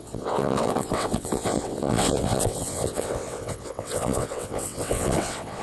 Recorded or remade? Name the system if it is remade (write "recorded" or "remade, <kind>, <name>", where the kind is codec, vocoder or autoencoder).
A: remade, vocoder, WaveNeXt